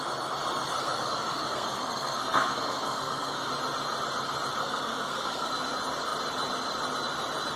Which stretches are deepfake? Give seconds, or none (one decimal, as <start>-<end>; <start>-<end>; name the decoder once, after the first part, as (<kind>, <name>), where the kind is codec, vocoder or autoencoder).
0.7-3.5 (codec, SNAC); 4.6-5.5